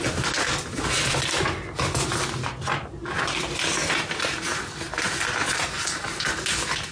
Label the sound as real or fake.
real